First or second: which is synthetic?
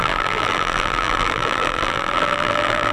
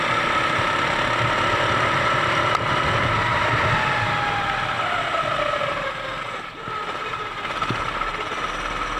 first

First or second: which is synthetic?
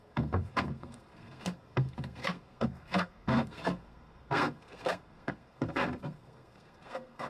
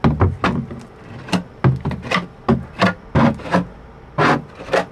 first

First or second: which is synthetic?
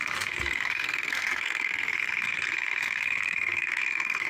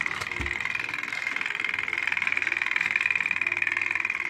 first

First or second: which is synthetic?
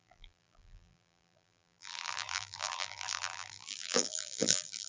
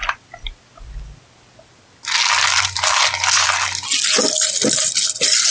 first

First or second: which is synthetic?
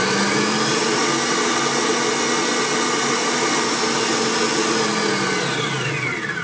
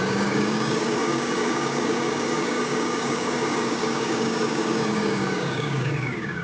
second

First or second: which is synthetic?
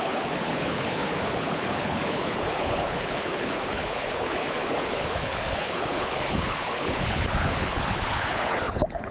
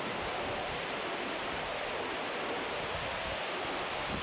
first